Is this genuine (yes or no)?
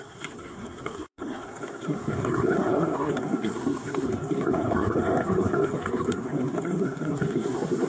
no